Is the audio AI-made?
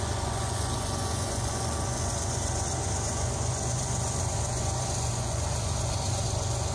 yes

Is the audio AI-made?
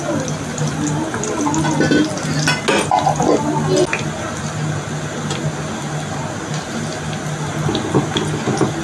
no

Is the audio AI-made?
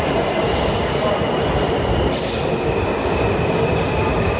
no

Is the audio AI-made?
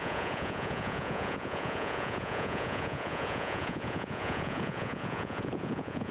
yes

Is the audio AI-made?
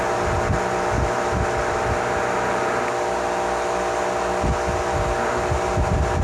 no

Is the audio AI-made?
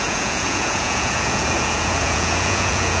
yes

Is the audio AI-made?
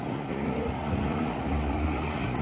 yes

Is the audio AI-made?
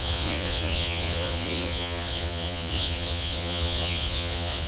yes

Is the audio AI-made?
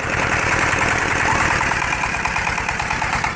no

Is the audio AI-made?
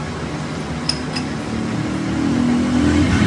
no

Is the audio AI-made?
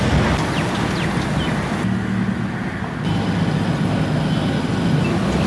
no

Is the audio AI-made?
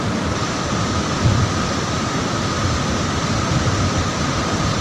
no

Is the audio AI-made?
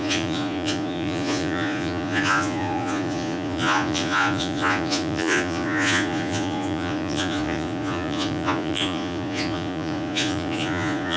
yes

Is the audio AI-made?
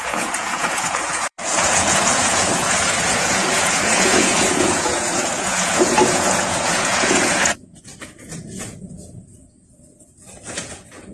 yes